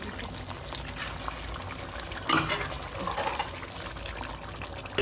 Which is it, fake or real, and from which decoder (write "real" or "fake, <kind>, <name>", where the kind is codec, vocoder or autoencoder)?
real